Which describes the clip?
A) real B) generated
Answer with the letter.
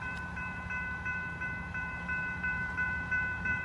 B